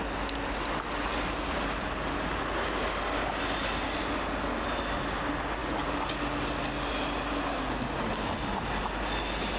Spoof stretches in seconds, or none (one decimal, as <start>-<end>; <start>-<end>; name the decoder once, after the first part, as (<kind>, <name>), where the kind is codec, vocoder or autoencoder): none